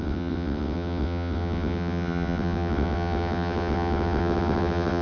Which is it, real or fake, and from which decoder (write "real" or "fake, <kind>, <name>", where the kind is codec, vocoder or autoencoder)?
fake, vocoder, WaveNeXt